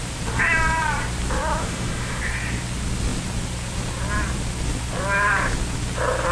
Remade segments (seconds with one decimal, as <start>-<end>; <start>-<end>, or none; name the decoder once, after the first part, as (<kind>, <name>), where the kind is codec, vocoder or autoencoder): 1.6-2.2 (autoencoder, DAC-VAE)